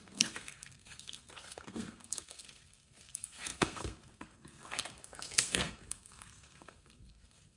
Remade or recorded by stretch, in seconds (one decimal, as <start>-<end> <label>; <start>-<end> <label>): 0.0-7.6 remade